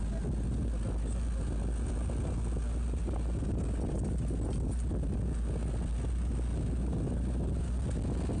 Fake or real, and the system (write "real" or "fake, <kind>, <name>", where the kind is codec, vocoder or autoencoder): real